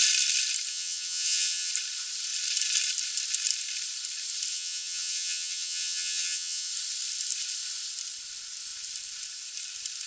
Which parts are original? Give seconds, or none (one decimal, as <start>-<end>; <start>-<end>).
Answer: 0.0-0.7; 1.7-4.5; 6.7-10.1